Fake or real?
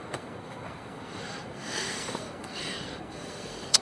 fake